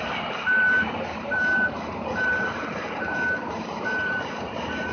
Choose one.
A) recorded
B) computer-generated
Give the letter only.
B